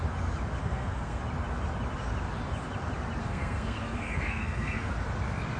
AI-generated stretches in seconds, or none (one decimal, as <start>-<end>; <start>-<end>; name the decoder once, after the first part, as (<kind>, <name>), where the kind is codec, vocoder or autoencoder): 0.6-1.2 (codec, SNAC); 3.2-4.9